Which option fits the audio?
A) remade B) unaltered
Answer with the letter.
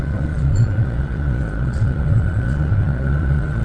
A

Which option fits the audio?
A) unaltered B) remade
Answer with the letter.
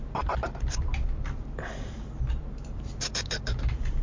B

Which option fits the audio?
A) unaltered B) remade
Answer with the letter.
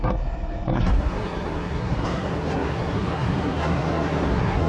B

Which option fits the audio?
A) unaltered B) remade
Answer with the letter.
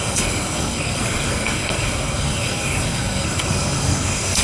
B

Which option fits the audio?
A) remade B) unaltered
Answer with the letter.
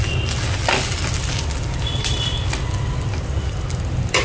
B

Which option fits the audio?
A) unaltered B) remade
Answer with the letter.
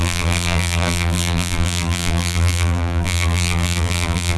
B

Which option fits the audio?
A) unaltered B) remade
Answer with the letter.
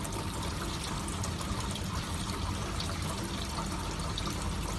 A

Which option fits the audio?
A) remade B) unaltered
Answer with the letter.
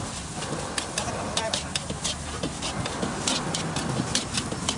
B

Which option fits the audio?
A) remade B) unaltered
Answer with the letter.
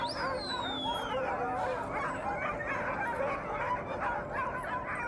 B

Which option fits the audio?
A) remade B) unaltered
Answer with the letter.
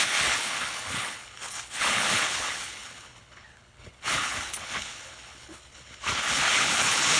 A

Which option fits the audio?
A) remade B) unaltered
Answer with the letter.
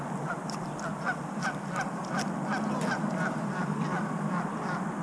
B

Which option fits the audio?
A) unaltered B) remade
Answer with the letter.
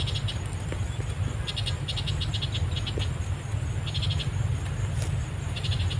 A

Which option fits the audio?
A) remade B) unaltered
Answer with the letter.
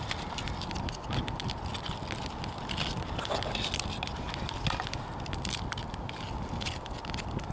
B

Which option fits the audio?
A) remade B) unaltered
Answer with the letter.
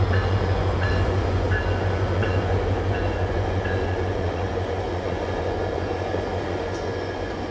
A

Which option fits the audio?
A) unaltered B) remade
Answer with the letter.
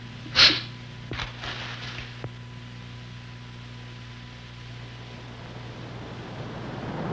A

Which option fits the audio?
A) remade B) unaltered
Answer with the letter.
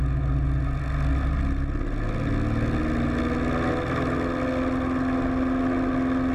B